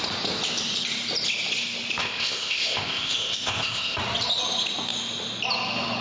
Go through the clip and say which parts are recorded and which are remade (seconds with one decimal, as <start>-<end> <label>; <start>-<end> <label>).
0.0-2.0 recorded; 2.0-4.0 remade; 4.0-6.0 recorded